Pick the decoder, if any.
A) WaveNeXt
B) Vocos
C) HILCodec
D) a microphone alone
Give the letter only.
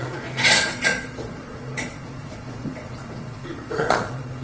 B